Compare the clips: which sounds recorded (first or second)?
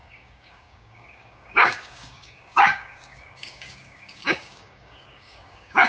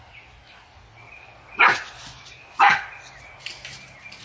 second